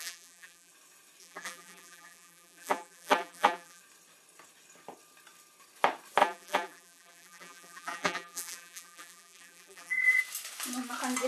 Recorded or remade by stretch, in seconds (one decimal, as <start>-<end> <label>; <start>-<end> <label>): 0.0-0.7 remade; 0.7-1.2 recorded; 1.2-3.8 remade; 3.8-6.2 recorded; 6.2-10.2 remade; 10.2-11.3 recorded